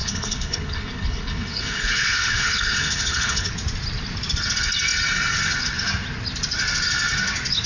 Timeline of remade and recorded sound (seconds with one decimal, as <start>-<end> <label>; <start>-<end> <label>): 0.0-3.5 remade; 3.5-7.7 recorded